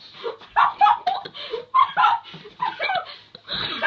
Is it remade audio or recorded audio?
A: recorded